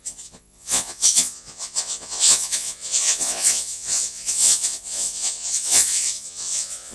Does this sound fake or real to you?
fake